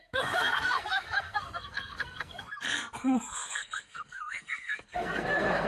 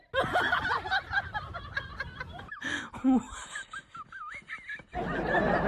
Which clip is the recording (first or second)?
second